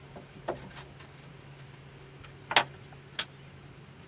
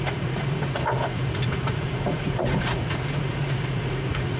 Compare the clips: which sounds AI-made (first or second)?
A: second